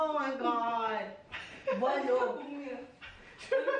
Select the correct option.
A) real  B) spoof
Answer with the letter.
B